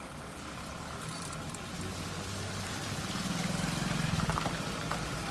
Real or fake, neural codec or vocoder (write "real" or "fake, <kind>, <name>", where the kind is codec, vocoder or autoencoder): fake, vocoder, BigVGAN v2